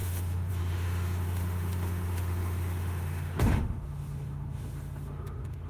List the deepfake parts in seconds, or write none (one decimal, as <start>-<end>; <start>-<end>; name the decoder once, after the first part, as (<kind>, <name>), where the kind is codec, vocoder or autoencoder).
0.0-5.7 (autoencoder, DAC-VAE)